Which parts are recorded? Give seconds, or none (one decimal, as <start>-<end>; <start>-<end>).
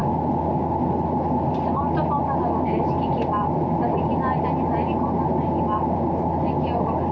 0.0-7.1